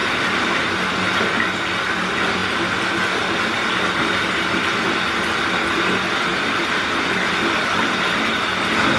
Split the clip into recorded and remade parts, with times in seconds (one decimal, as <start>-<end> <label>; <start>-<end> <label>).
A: 0.0-0.9 remade; 0.9-6.3 recorded; 6.3-6.8 remade; 6.8-9.0 recorded

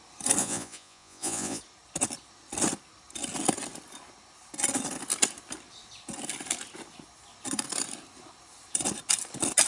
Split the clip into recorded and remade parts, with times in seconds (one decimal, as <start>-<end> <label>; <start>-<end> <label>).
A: 0.0-0.4 recorded; 0.4-1.6 remade; 1.6-9.7 recorded

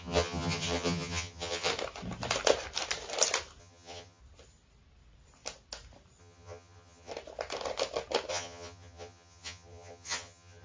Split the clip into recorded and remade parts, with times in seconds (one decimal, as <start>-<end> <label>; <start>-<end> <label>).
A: 0.0-1.7 remade; 1.7-3.6 recorded; 3.6-4.2 remade; 4.2-6.2 recorded; 6.2-7.1 remade; 7.1-8.3 recorded; 8.3-10.6 remade